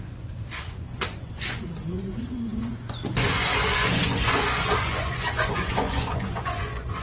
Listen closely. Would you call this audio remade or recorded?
remade